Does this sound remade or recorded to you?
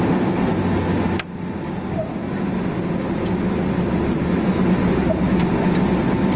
recorded